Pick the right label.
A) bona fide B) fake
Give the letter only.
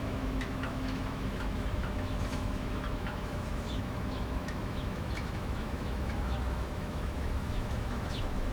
B